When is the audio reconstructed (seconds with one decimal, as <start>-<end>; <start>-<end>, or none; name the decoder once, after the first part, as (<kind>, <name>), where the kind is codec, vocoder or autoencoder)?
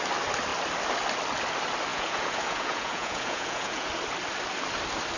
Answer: 1.9-3.9 (vocoder, Vocos)